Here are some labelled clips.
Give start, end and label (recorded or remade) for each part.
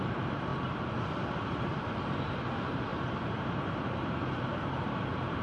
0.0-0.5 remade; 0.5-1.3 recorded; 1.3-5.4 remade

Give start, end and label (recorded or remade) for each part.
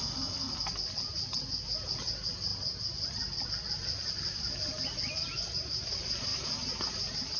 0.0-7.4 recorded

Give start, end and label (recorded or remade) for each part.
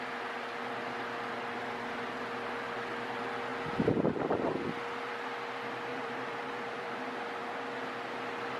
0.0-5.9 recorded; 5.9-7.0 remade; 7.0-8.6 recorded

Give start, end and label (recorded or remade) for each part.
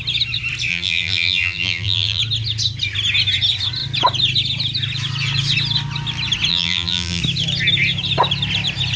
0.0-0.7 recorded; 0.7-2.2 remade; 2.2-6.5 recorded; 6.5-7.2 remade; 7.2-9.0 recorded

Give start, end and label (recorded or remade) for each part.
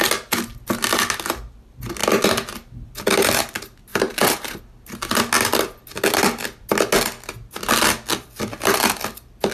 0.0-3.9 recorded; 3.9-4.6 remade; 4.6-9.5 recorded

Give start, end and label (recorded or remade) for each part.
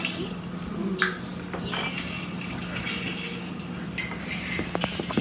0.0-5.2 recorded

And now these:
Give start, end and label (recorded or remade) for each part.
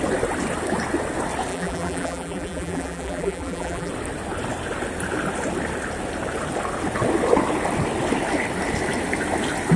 0.0-1.5 recorded; 1.5-3.9 remade; 3.9-9.8 recorded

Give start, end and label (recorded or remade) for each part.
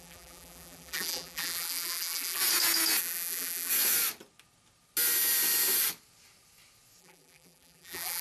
0.0-2.4 remade; 2.4-3.0 recorded; 3.0-3.7 remade; 3.7-7.0 recorded; 7.0-8.2 remade